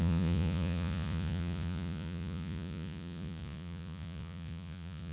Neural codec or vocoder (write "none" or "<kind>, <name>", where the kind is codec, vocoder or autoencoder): vocoder, Vocos